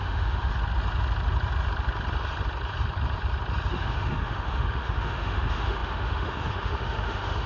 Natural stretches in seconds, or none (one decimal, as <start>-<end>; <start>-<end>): 0.5-3.7